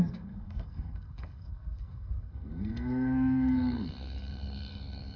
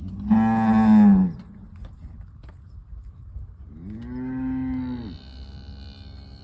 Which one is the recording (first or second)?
second